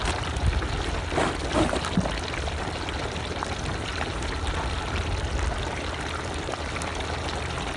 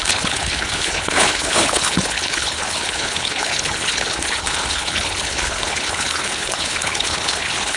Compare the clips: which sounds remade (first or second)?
second